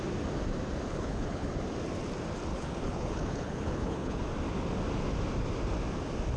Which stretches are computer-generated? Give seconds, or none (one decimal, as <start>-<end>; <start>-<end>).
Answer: 0.9-1.5; 2.5-4.2